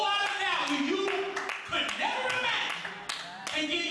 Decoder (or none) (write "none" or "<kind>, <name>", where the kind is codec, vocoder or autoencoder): none